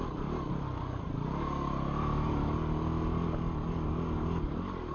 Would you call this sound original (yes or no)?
yes